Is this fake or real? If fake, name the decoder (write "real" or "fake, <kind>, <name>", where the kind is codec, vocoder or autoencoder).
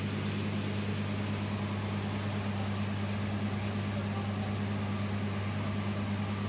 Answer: real